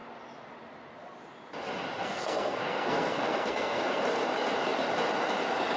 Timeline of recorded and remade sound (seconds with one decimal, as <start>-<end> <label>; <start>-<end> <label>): 0.0-2.0 recorded; 2.0-4.0 remade; 4.0-5.8 recorded